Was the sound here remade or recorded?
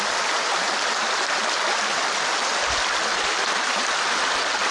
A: recorded